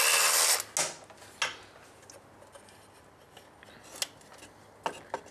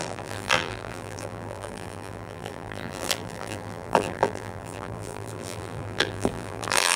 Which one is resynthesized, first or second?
second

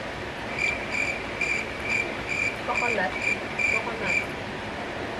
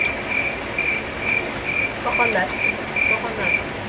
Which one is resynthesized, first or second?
first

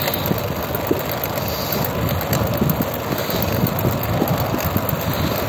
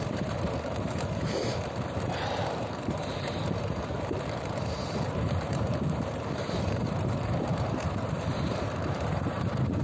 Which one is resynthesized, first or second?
second